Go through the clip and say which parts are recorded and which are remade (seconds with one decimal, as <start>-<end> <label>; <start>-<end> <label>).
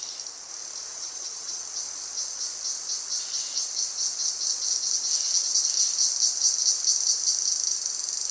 0.0-0.9 recorded; 0.9-1.6 remade; 1.6-8.3 recorded